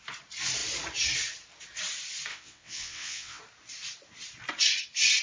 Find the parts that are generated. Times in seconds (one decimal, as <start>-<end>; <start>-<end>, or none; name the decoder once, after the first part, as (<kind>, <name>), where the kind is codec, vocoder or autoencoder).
2.3-3.4 (vocoder, WaveNeXt)